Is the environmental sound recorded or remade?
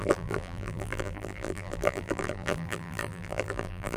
remade